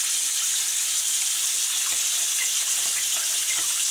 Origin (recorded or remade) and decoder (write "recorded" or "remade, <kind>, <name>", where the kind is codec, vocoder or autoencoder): recorded